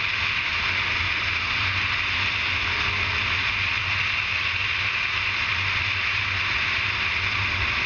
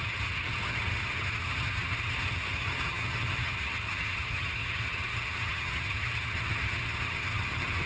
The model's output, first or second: second